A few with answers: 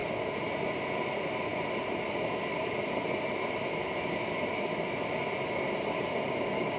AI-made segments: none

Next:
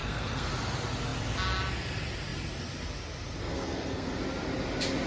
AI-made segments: 0.0-0.5 (codec, SNAC); 3.4-4.2